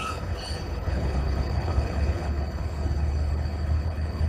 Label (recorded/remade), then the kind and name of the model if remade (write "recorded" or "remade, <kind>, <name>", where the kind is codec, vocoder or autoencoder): remade, codec, HILCodec